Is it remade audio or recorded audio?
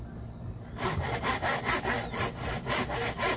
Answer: recorded